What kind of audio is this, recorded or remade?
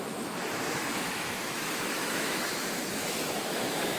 remade